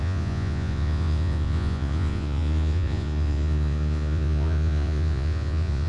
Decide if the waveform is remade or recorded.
remade